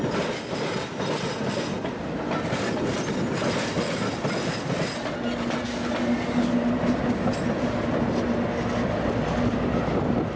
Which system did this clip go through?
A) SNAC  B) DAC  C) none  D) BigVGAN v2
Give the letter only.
C